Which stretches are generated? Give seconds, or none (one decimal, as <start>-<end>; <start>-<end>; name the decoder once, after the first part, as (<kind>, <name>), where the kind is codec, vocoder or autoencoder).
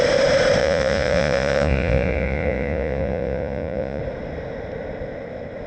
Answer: 0.6-4.0 (vocoder, Vocos)